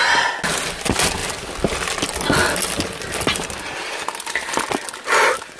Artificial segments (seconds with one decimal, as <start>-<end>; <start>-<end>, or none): none